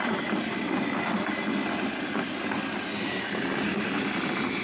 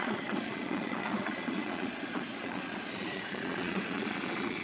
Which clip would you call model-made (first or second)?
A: second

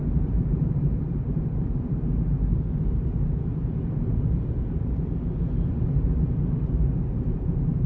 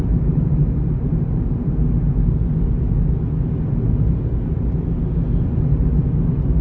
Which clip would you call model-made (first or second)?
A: first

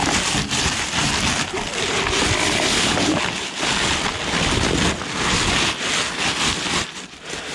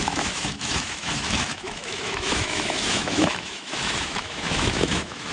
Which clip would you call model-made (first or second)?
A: second